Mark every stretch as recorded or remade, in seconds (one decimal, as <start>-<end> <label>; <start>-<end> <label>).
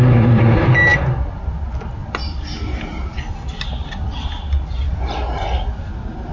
0.0-2.9 recorded; 2.9-5.1 remade; 5.1-6.3 recorded